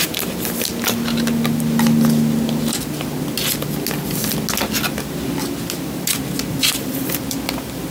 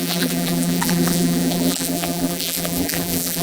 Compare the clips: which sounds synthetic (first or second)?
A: second